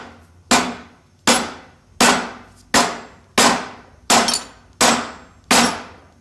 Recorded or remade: recorded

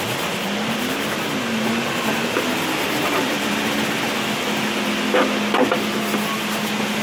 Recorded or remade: recorded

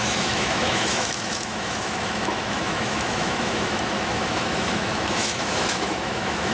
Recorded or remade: remade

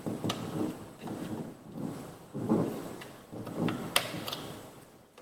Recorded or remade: recorded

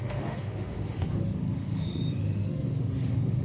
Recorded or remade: remade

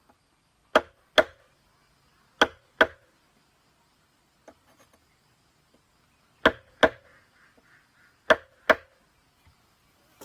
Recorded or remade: recorded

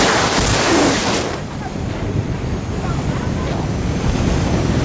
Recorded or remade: recorded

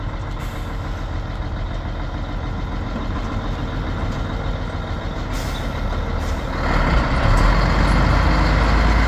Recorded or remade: recorded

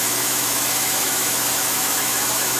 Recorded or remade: remade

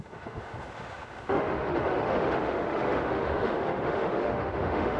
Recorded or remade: remade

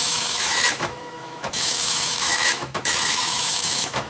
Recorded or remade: remade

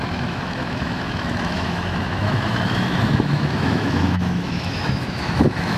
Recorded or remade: remade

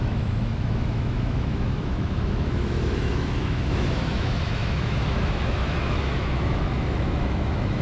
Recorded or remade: remade